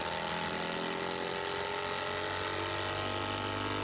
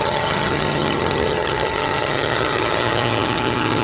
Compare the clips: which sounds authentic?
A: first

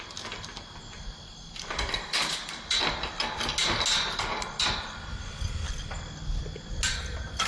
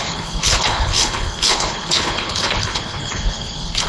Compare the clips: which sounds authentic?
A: first